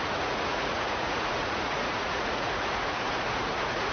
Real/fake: fake